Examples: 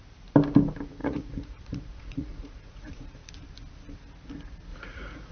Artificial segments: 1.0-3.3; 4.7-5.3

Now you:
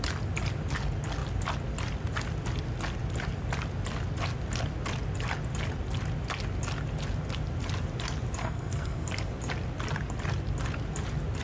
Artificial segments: 8.4-9.1

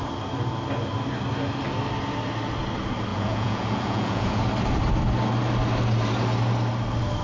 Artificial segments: 3.1-4.4

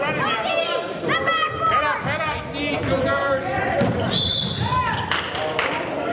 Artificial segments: 3.2-4.4

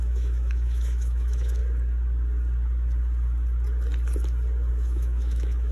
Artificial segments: 0.0-1.6; 4.7-5.7